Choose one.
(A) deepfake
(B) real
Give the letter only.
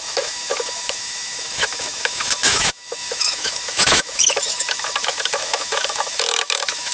A